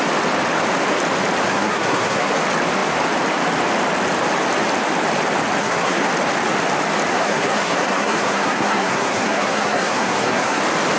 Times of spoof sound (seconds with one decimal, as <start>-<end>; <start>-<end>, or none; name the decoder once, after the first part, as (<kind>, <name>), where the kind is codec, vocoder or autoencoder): 1.5-2.3 (codec, SNAC); 5.6-6.1; 7.1-10.6

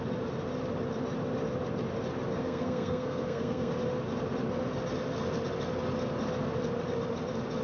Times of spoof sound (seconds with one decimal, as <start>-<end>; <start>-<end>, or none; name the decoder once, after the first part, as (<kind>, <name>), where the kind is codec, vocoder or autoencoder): 2.4-3.7 (codec, SNAC)

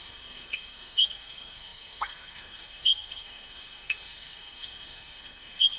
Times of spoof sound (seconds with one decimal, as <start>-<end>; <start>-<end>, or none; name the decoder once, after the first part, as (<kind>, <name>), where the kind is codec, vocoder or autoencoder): 0.0-5.8 (codec, SNAC)

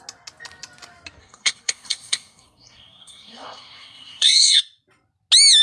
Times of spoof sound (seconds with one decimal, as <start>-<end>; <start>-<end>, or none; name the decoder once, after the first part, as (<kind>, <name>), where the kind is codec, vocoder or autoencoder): 1.2-4.6 (codec, SNAC)

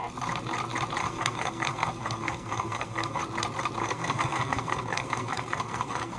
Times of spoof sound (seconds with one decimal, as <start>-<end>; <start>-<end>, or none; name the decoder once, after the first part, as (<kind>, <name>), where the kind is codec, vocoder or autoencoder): 1.0-3.2 (codec, SNAC); 3.8-6.2

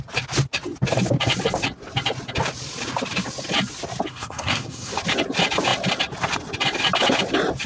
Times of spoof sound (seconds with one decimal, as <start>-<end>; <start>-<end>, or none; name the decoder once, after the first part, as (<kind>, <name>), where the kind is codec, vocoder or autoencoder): 4.1-4.9 (codec, SNAC)

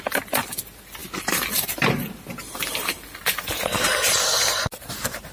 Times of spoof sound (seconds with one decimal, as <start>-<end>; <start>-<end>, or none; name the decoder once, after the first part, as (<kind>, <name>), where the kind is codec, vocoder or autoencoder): none